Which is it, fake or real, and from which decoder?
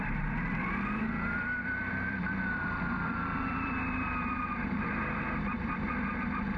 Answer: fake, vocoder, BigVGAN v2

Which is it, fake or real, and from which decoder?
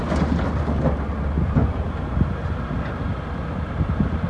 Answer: real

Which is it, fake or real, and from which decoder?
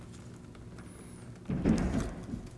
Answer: real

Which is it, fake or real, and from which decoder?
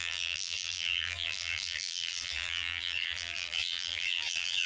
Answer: fake, vocoder, BigVGAN v2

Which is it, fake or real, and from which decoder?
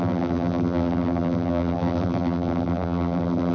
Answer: fake, vocoder, BigVGAN v2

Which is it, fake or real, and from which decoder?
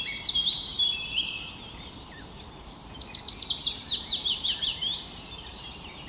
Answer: fake, vocoder, BigVGAN v2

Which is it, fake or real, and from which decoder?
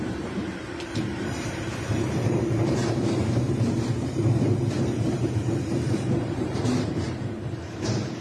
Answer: fake, vocoder, BigVGAN v2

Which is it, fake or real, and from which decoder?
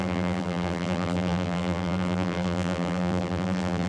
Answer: fake, vocoder, BigVGAN v2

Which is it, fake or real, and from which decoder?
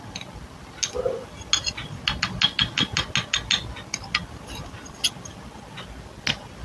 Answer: real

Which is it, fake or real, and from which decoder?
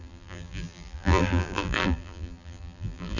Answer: fake, vocoder, BigVGAN v2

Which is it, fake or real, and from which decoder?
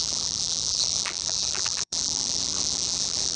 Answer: fake, vocoder, BigVGAN v2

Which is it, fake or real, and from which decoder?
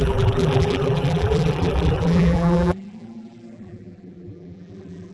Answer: fake, vocoder, BigVGAN v2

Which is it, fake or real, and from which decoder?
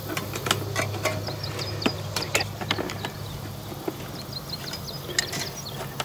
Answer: real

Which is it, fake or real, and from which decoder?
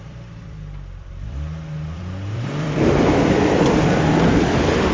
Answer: fake, vocoder, BigVGAN v2